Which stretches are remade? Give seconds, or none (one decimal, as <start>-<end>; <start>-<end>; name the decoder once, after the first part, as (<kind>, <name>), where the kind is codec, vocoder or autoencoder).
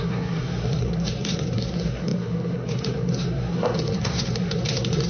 0.0-5.1 (codec, SNAC)